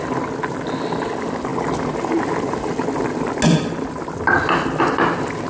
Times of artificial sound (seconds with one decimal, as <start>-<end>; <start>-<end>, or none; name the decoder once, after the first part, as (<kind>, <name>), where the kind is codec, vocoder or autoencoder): none